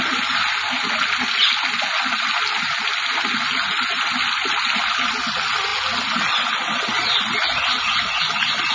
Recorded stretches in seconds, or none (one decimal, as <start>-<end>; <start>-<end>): 0.0-8.7